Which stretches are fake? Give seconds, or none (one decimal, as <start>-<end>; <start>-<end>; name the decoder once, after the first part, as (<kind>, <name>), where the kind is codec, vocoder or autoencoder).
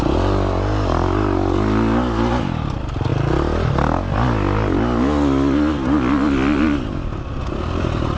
none